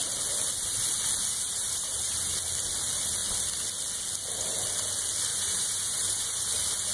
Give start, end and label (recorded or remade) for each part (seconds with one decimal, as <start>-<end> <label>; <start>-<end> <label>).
0.0-1.3 recorded; 1.3-2.4 remade; 2.4-5.3 recorded; 5.3-6.5 remade; 6.5-6.9 recorded

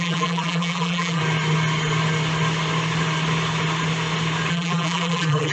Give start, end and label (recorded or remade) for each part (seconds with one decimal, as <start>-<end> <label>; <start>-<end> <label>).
0.0-1.2 remade; 1.2-4.5 recorded; 4.5-5.5 remade

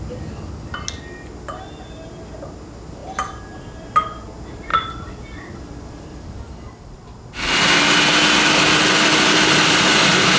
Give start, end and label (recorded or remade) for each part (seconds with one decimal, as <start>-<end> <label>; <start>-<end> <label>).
0.0-4.7 recorded; 4.7-7.0 remade; 7.0-10.4 recorded